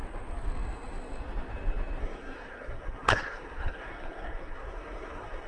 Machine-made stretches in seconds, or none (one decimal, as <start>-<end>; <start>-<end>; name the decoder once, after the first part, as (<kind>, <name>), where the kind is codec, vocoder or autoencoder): 2.0-5.5 (codec, SNAC)

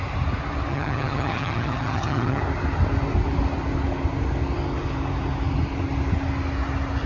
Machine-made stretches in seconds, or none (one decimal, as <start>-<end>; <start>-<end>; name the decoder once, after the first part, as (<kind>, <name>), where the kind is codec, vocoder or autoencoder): 0.7-2.4 (vocoder, HiFi-GAN)